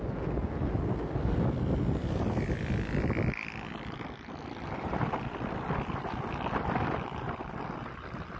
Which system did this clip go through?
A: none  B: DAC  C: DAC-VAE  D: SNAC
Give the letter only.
A